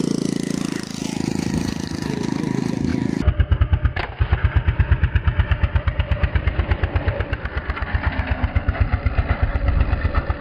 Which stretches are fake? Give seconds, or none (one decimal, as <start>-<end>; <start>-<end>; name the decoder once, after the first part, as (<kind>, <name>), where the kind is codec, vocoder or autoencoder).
none